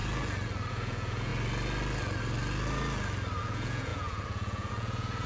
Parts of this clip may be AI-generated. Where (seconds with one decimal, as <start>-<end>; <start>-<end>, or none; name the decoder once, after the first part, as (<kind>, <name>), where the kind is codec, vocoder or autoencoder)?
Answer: 0.7-1.3 (vocoder, Vocos); 3.4-5.3